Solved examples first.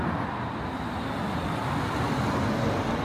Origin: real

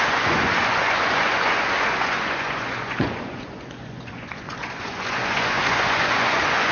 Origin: fake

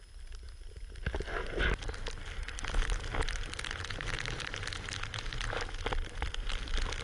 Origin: real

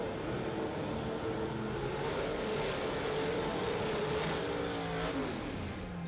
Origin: real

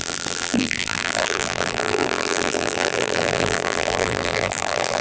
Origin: fake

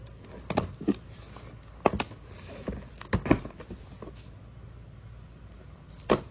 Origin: real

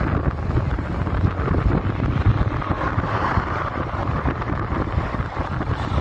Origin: real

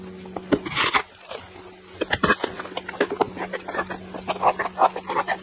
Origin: real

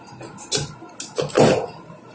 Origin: real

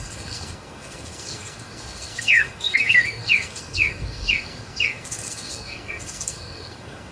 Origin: fake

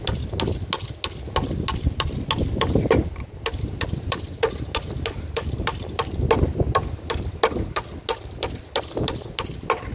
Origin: real